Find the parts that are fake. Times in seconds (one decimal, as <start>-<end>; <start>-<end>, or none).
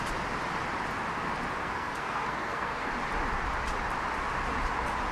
1.6-2.9